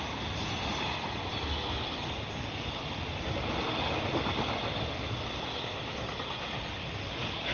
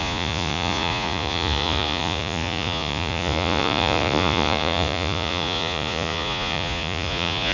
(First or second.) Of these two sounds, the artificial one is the second